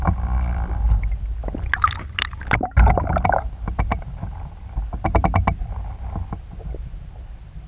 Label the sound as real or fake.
real